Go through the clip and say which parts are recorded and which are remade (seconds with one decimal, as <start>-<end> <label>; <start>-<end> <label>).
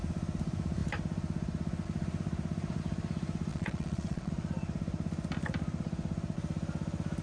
0.0-3.5 recorded; 3.5-4.3 remade; 4.3-7.2 recorded